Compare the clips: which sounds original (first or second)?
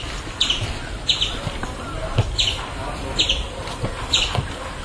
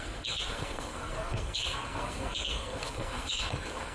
first